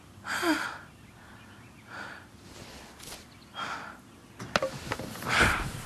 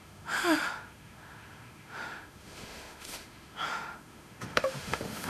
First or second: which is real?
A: first